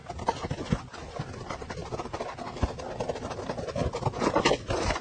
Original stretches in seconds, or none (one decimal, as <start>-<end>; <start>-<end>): 0.0-1.1; 1.8-3.4; 3.8-4.4